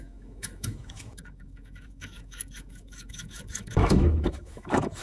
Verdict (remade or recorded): remade